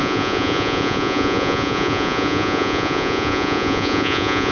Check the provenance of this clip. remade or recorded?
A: remade